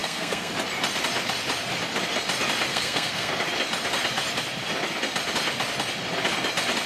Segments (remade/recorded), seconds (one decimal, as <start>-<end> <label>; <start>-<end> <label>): 0.0-0.5 remade; 0.5-2.7 recorded; 2.7-3.3 remade; 3.3-6.9 recorded